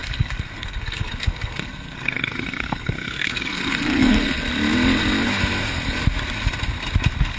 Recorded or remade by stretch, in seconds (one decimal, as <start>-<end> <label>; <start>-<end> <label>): 0.0-4.4 remade; 4.4-7.4 recorded